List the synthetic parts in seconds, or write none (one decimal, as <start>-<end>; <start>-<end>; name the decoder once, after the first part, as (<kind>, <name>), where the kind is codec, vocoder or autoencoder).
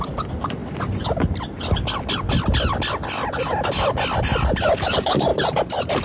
0.0-0.6 (vocoder, BigVGAN v2); 4.2-6.0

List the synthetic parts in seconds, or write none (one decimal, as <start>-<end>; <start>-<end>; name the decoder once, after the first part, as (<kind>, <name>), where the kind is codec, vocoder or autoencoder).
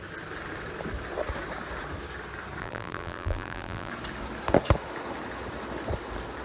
2.6-3.9 (vocoder, BigVGAN v2)